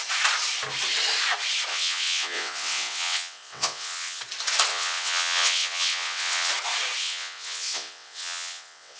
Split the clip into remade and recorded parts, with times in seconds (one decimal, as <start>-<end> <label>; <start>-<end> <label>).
0.0-1.7 recorded; 1.7-4.2 remade; 4.2-4.7 recorded; 4.7-6.5 remade; 6.5-7.0 recorded; 7.0-9.0 remade